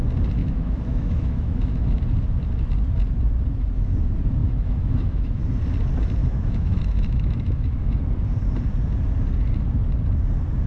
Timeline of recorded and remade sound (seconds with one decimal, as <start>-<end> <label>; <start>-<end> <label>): 0.0-0.4 recorded; 0.4-2.0 remade; 2.0-4.4 recorded; 4.4-5.4 remade; 5.4-6.2 recorded; 6.2-8.0 remade; 8.0-10.7 recorded